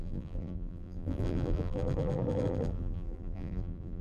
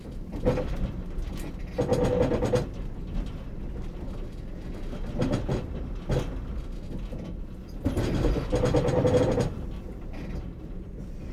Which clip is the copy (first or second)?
first